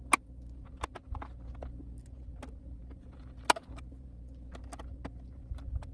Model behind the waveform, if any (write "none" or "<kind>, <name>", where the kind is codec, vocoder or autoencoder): none